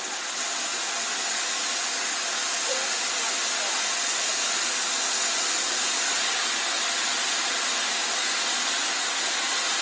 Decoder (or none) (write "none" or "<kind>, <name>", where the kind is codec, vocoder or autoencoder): none